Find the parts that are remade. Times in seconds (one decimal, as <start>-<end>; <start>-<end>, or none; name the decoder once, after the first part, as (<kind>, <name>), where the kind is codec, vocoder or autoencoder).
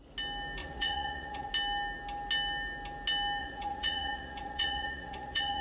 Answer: 0.6-1.5 (vocoder, Vocos); 3.4-5.6